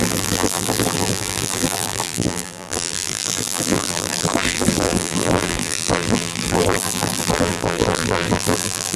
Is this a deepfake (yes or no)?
yes